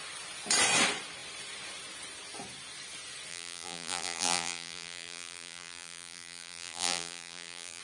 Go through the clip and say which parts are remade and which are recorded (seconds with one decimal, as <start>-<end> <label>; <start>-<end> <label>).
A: 0.0-3.3 recorded; 3.3-7.8 remade